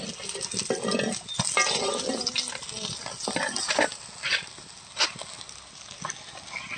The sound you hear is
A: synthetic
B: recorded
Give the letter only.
B